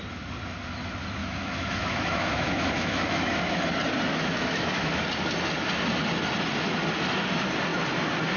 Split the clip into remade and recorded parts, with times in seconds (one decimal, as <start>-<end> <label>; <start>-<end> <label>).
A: 0.0-1.2 recorded; 1.2-3.6 remade; 3.6-4.1 recorded; 4.1-5.0 remade; 5.0-8.4 recorded